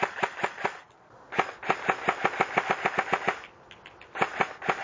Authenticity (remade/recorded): recorded